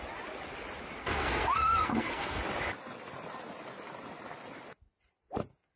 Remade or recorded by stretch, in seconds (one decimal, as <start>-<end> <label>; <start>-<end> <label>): 0.0-1.0 recorded; 1.0-2.4 remade; 2.4-5.8 recorded